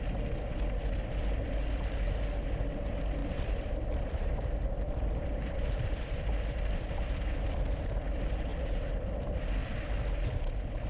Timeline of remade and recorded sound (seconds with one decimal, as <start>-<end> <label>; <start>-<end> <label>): 0.0-3.2 recorded; 3.2-7.7 remade; 7.7-8.5 recorded; 8.5-9.0 remade; 9.0-10.9 recorded